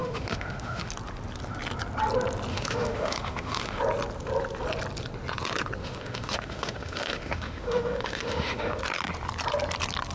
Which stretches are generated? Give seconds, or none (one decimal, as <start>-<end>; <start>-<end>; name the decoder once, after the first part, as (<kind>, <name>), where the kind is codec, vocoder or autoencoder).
0.0-0.9 (autoencoder, DAC-VAE); 2.5-3.8; 5.8-8.8